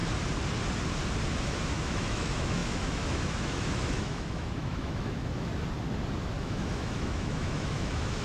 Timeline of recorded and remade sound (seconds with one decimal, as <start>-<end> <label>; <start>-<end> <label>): 0.0-1.4 recorded; 1.4-5.5 remade; 5.5-6.4 recorded; 6.4-8.2 remade